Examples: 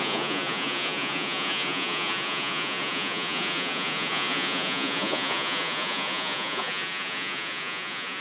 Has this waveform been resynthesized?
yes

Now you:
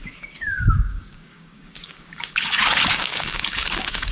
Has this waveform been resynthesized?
yes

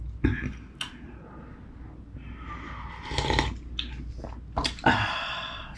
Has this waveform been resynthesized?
no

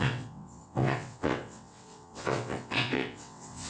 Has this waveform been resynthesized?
yes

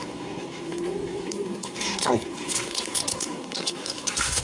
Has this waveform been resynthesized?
yes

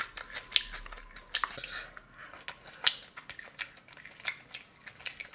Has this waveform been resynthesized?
no